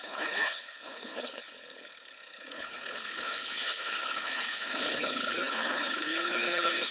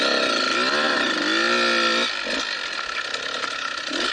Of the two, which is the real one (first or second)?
second